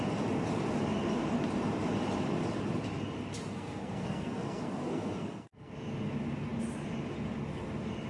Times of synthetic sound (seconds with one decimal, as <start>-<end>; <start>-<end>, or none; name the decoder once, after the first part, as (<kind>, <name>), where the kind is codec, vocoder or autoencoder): 3.5-5.7 (codec, SNAC)